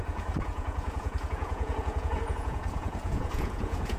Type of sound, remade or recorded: remade